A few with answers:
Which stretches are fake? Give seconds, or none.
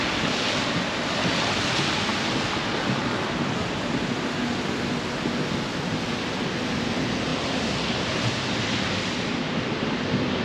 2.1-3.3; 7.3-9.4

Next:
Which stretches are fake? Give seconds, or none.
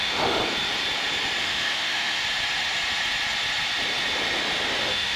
0.0-0.4; 1.4-2.2; 4.8-5.2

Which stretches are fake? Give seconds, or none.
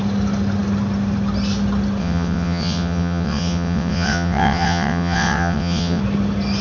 2.0-6.0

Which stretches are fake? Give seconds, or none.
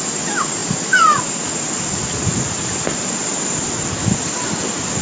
none